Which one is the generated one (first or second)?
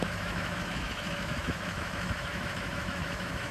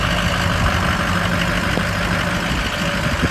first